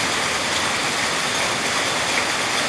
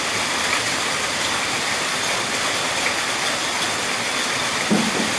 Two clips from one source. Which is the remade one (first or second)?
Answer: second